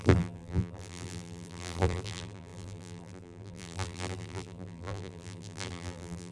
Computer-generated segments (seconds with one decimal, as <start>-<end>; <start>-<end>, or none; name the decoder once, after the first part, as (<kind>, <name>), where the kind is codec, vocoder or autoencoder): 0.0-6.3 (vocoder, BigVGAN v2)